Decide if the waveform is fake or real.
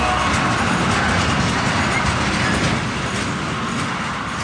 real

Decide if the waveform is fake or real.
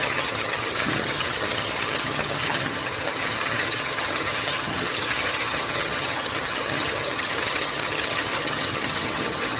fake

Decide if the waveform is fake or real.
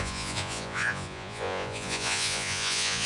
fake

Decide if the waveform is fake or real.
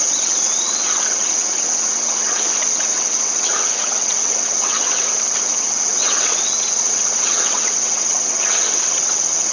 fake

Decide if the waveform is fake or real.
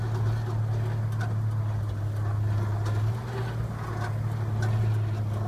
real